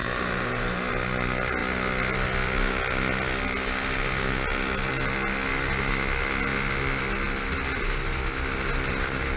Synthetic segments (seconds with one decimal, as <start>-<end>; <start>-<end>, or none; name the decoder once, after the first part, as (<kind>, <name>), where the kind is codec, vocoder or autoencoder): 0.0-0.9 (vocoder, BigVGAN v2)

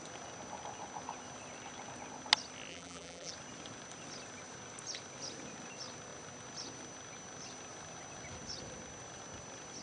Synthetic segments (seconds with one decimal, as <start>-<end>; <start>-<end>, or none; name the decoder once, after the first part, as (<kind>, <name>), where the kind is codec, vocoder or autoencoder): 2.7-3.3 (vocoder, BigVGAN v2)